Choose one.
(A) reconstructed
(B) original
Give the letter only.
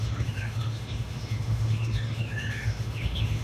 A